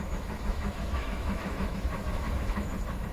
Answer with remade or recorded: remade